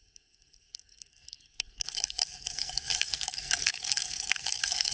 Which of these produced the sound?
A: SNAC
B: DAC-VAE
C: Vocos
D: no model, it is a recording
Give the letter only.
A